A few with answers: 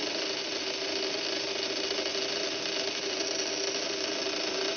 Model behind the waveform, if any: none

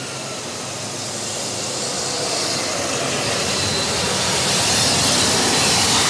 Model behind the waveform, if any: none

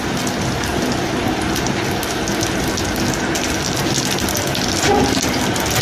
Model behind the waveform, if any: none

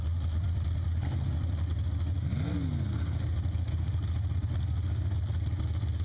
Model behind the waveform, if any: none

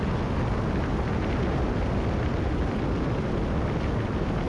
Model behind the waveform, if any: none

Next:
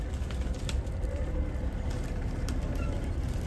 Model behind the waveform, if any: none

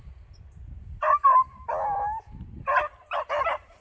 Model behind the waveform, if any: none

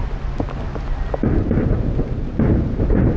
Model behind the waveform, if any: none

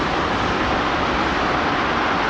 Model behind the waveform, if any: none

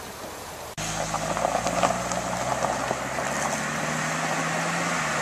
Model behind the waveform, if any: none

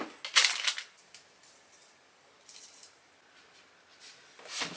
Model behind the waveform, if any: none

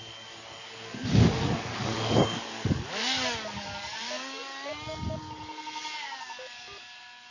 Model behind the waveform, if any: codec, DAC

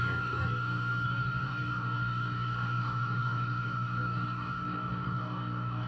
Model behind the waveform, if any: codec, DAC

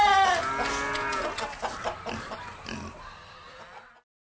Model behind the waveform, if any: none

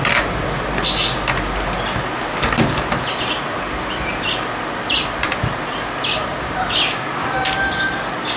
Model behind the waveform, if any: none